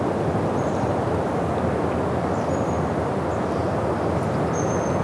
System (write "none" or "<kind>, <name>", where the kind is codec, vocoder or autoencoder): vocoder, BigVGAN v2